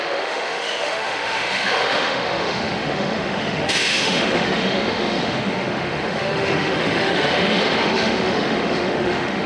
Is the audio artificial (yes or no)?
yes